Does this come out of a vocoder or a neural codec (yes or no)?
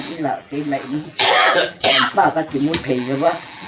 yes